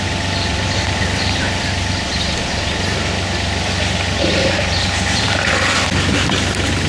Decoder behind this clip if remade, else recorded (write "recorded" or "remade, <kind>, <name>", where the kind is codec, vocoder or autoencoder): recorded